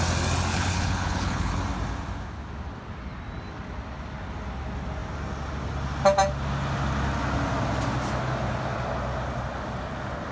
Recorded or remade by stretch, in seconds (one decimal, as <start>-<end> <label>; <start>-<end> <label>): 0.0-0.5 recorded; 0.5-1.6 remade; 1.6-10.3 recorded